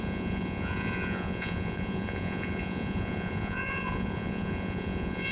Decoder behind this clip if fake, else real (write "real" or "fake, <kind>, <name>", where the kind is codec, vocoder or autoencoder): fake, vocoder, Vocos